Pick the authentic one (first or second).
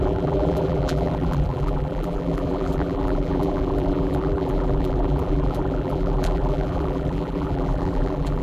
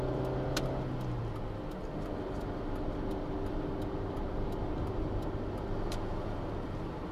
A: second